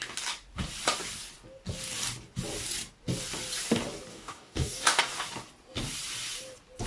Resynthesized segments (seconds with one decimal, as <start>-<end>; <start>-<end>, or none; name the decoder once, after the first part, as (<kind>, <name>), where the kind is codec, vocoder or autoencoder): 4.1-5.0 (codec, DAC)